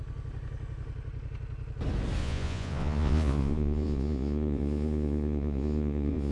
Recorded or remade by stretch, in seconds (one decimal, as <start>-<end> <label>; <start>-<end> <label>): 0.0-2.2 recorded; 2.2-6.3 remade